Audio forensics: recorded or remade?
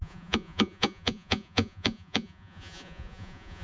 remade